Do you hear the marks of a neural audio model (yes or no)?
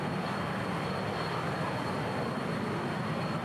no